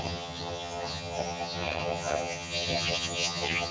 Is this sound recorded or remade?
remade